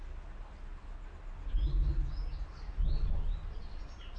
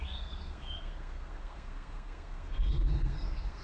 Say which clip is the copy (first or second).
second